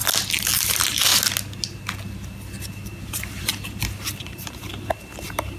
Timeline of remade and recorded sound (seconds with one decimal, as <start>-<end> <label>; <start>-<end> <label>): 0.0-0.6 recorded; 0.6-1.1 remade; 1.1-2.6 recorded; 2.6-5.6 remade